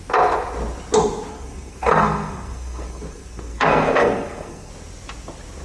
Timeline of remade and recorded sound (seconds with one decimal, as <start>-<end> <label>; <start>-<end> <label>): 0.0-1.3 recorded; 1.3-4.7 remade; 4.7-5.6 recorded